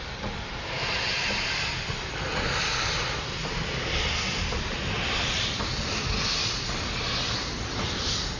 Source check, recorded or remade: recorded